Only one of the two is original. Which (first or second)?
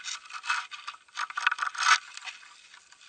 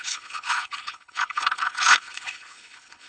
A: first